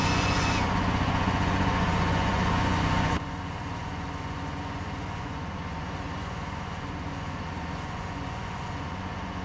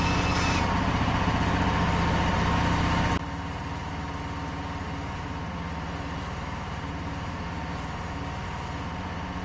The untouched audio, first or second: second